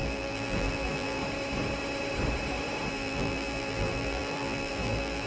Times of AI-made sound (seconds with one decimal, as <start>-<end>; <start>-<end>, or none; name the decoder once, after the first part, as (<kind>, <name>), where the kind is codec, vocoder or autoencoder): 0.0-1.2 (vocoder, BigVGAN v2); 2.9-5.3